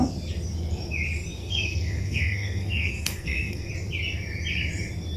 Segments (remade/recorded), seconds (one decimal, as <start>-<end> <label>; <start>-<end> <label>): 0.0-1.4 recorded; 1.4-3.7 remade; 3.7-5.2 recorded